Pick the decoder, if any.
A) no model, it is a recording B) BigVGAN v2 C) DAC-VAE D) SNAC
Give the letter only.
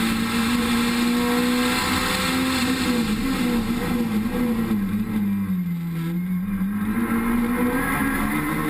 A